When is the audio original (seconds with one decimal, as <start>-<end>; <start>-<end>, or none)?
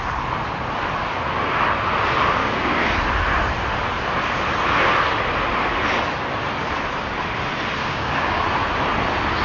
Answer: 0.0-2.4; 2.9-7.8; 8.4-9.4